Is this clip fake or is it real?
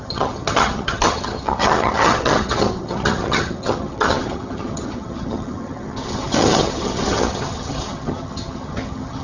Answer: fake